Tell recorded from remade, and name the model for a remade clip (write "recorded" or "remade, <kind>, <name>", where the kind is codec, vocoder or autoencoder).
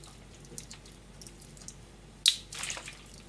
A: recorded